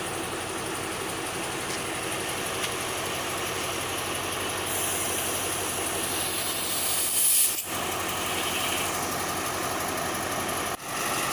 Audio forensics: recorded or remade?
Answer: recorded